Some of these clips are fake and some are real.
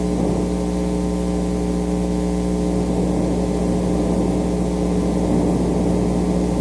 real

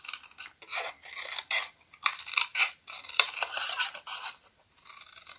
fake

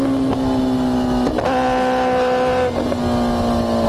real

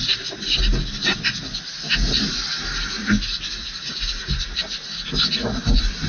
real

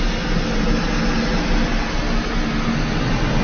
real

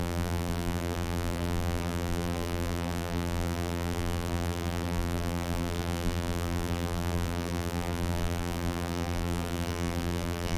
fake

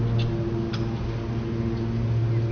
real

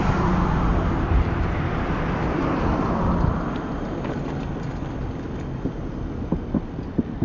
real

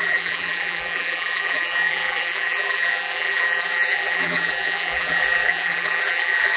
fake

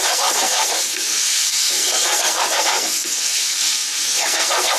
fake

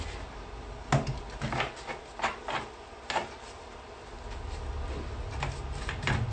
real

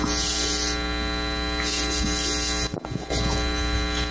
real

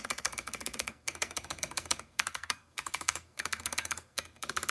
fake